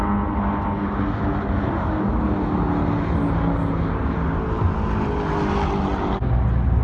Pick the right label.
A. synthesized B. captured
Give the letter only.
B